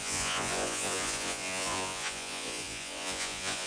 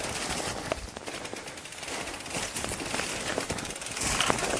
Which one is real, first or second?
second